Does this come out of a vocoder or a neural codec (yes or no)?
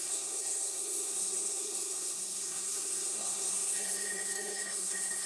yes